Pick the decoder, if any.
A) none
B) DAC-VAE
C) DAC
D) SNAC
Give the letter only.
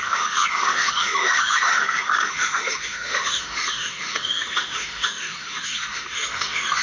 B